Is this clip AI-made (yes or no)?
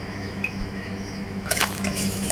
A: yes